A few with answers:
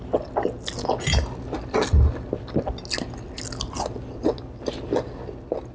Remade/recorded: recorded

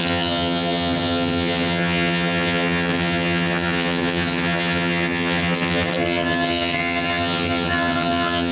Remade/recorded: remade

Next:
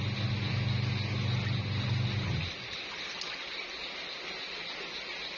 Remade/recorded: recorded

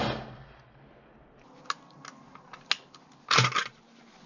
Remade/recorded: recorded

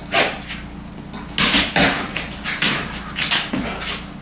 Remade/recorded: recorded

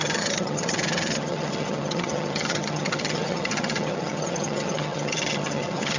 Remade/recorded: remade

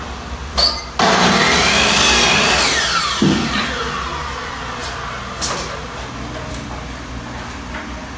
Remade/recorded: recorded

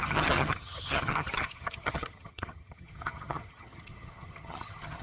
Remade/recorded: remade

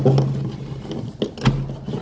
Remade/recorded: recorded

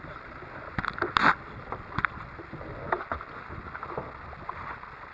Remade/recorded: recorded